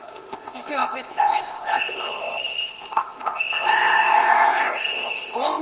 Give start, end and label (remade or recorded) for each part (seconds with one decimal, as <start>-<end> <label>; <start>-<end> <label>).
0.0-5.6 remade